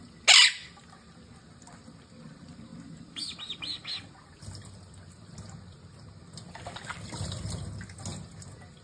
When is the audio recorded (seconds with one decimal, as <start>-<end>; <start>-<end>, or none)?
0.0-8.8